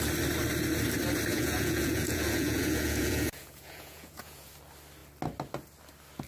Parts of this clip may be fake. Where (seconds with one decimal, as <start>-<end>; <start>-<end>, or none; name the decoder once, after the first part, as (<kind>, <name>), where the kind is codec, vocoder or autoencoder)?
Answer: 1.3-4.5 (vocoder, Vocos)